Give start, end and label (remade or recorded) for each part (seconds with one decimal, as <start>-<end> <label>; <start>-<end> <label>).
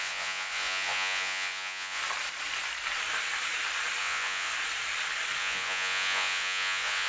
0.0-2.0 remade; 2.0-4.0 recorded; 4.0-4.5 remade; 4.5-5.4 recorded; 5.4-7.1 remade